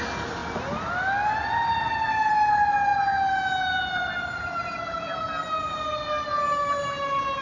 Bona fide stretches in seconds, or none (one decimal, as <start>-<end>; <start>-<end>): 0.0-7.4

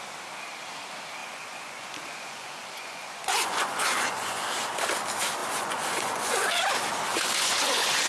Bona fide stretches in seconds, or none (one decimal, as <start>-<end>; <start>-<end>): 0.0-1.2; 4.4-5.4; 6.5-7.1

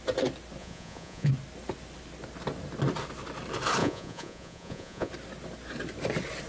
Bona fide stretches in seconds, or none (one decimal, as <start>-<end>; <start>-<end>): 0.0-0.6; 1.3-3.8; 5.1-6.5

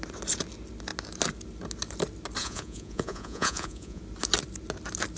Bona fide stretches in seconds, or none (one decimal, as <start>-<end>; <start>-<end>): 0.0-2.4; 4.0-5.2